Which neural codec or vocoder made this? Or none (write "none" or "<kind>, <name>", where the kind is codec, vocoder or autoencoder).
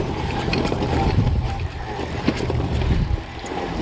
vocoder, BigVGAN v2